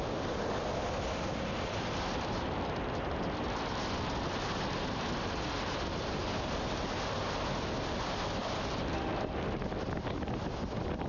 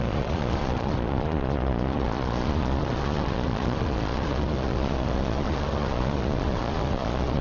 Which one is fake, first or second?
second